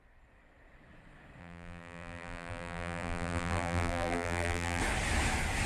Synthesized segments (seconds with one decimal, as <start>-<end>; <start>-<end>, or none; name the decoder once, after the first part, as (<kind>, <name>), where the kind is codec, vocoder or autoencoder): 1.4-4.8 (vocoder, BigVGAN v2)